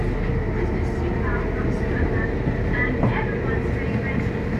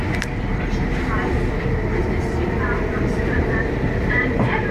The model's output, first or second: second